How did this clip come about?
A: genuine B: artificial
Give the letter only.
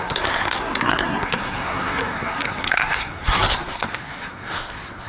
B